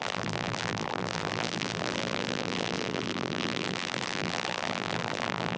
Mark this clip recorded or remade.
remade